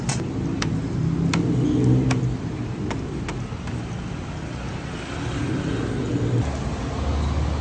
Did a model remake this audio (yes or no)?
no